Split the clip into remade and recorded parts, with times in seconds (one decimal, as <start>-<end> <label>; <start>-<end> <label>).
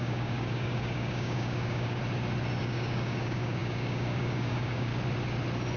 0.0-2.0 remade; 2.0-2.6 recorded; 2.6-4.9 remade; 4.9-5.8 recorded